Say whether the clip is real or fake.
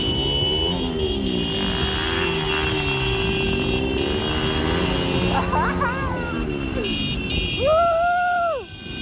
real